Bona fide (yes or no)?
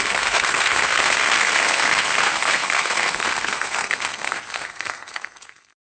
no